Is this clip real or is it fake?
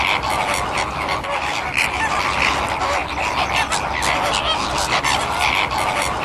real